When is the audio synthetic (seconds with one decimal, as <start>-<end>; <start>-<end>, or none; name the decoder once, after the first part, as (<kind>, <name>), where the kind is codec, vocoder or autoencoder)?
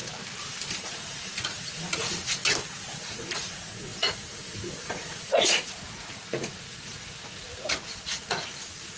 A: 0.8-2.4 (vocoder, Vocos); 2.9-9.0